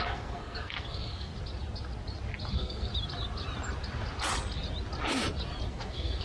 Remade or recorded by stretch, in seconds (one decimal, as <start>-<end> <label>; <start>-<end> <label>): 0.0-1.3 remade; 1.3-2.5 recorded; 2.5-2.9 remade; 2.9-5.7 recorded; 5.7-6.2 remade